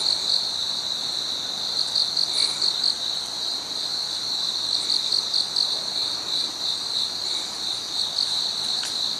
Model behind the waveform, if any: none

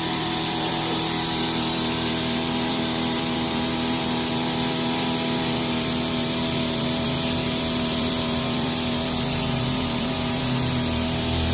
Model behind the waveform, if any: vocoder, BigVGAN v2